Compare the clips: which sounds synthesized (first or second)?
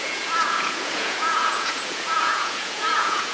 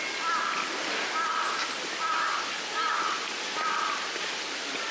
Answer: first